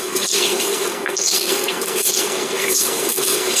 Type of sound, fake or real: fake